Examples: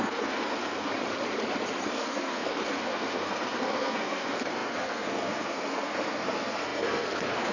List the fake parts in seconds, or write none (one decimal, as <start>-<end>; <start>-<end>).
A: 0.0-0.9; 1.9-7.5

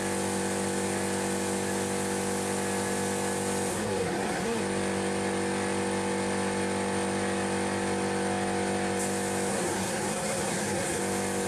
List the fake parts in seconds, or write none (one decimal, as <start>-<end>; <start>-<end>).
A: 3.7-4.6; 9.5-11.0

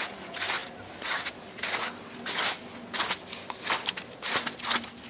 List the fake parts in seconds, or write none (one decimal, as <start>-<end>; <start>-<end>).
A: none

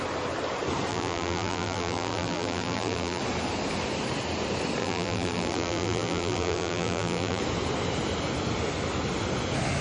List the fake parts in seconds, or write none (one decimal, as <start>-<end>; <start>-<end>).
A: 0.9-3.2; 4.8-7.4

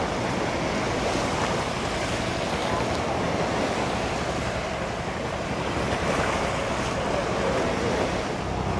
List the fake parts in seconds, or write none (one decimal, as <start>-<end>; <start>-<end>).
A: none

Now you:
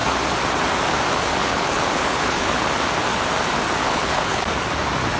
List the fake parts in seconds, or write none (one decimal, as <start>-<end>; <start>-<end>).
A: 1.4-2.6; 3.8-4.4